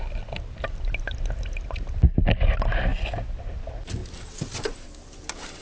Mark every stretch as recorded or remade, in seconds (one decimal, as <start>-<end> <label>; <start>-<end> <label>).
0.0-5.6 recorded